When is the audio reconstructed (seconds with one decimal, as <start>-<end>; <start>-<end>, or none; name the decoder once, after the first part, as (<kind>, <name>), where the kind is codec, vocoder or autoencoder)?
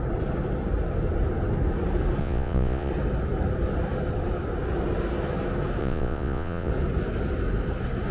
2.2-2.9 (vocoder, Vocos); 5.8-6.7